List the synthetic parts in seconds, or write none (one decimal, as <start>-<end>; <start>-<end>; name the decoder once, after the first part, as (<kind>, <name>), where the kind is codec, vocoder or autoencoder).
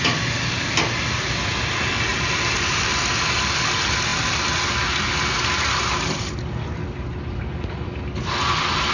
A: 2.1-2.9 (vocoder, BigVGAN v2); 5.8-6.4